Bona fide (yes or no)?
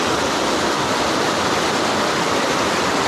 yes